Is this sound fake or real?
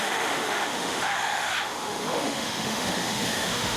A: fake